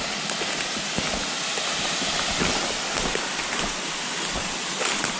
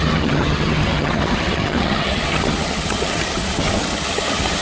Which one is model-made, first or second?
second